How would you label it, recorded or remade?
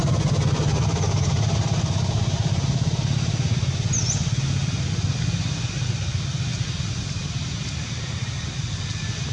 recorded